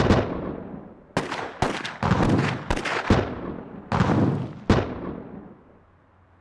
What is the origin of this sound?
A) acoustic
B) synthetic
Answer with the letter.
A